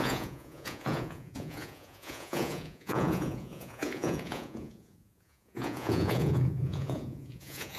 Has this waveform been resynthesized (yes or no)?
yes